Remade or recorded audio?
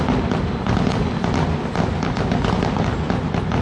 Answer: recorded